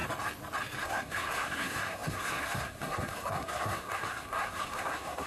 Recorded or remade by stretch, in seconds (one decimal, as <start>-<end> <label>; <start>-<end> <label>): 0.0-0.8 recorded; 0.8-5.3 remade